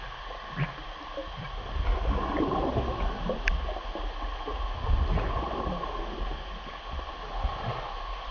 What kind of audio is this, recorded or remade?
recorded